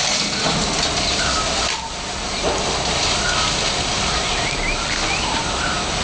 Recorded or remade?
recorded